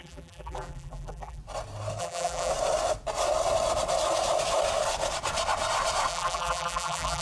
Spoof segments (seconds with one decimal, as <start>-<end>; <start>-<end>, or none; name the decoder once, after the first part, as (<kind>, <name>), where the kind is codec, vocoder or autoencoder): 0.0-1.4 (vocoder, BigVGAN v2); 2.0-2.5; 6.1-7.2